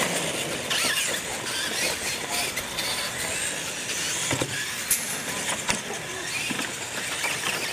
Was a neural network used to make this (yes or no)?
no